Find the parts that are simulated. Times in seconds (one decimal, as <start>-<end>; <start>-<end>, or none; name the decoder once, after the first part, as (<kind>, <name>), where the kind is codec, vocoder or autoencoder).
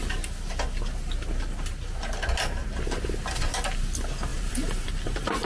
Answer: 4.3-5.5 (vocoder, BigVGAN v2)